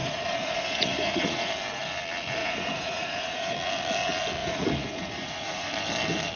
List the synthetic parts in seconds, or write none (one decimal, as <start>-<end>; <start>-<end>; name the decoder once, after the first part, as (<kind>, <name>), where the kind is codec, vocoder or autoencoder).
0.0-1.5 (vocoder, Vocos); 2.4-3.5; 4.4-5.7